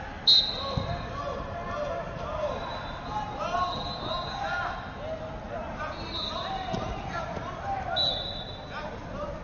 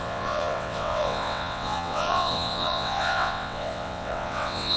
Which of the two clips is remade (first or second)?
second